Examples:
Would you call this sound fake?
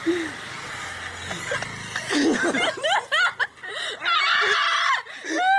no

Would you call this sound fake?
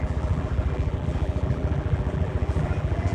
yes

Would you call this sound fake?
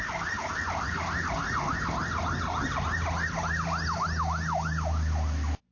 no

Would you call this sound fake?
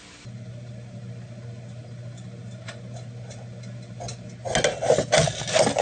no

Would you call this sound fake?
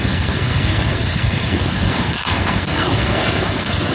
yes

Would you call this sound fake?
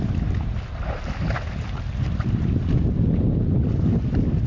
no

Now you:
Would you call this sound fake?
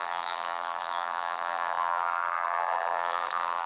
yes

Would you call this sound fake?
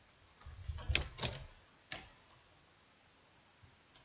no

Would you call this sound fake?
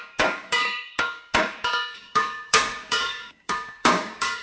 yes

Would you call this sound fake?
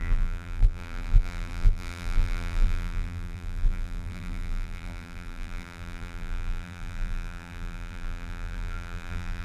yes